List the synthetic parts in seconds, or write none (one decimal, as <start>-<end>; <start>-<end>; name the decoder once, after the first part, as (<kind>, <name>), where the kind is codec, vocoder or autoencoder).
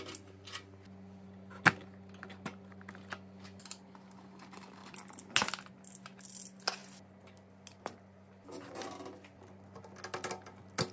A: none